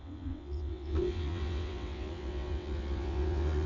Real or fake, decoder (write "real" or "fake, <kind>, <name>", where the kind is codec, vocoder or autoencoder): fake, vocoder, WaveNeXt